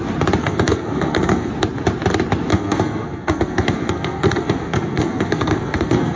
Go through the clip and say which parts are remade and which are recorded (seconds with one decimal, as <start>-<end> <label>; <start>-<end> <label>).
0.0-0.4 recorded; 0.4-1.5 remade; 1.5-2.5 recorded; 2.5-6.2 remade